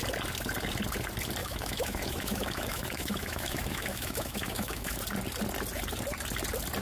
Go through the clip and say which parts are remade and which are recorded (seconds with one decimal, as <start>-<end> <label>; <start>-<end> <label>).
0.0-1.4 recorded; 1.4-5.0 remade; 5.0-6.8 recorded